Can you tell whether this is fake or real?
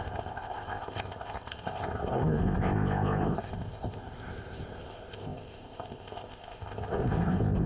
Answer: fake